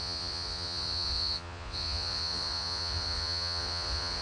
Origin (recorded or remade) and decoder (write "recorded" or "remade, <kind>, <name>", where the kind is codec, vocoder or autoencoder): remade, vocoder, Vocos